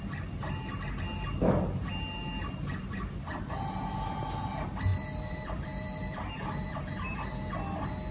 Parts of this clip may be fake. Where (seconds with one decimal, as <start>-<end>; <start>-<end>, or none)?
4.9-6.8

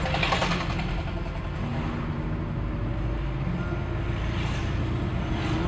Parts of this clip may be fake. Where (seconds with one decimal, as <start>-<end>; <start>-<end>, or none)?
0.4-1.2

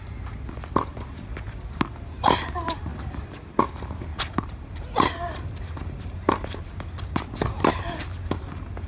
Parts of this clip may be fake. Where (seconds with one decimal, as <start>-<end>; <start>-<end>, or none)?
4.1-7.3

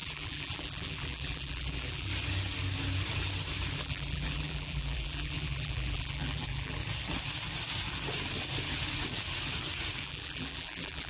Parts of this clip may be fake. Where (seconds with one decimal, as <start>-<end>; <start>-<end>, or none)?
0.0-2.1; 3.8-6.8; 10.0-11.1